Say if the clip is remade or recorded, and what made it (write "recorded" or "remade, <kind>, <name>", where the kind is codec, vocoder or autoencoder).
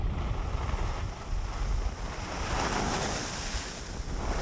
recorded